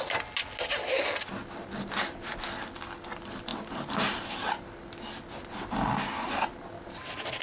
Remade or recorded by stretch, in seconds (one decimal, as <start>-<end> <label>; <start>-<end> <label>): 0.0-7.4 recorded